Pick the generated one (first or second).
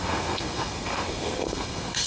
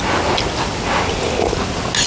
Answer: first